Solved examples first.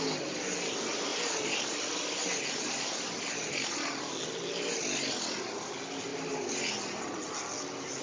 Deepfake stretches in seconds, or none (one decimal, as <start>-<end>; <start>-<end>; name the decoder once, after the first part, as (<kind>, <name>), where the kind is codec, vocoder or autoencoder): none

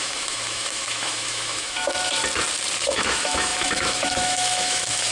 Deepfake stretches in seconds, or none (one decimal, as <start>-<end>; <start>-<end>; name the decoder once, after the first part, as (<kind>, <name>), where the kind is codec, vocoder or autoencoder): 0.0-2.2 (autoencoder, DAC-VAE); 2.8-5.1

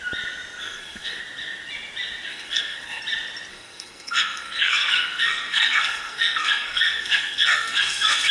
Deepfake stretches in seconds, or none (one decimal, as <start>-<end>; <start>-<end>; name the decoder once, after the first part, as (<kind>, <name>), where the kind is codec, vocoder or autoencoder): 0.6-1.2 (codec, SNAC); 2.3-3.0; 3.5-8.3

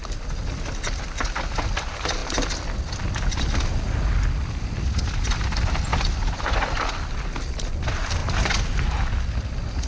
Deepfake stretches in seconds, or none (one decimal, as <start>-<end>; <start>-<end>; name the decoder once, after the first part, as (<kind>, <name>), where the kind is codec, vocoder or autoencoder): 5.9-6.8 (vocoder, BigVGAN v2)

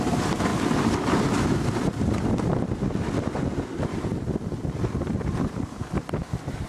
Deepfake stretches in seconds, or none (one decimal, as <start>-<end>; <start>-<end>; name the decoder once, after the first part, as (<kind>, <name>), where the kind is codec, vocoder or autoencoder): none